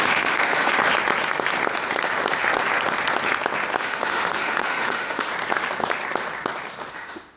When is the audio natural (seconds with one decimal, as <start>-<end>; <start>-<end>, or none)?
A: 0.8-3.8; 5.3-6.9